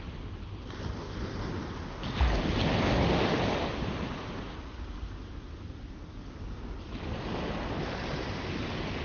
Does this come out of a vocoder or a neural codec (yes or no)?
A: no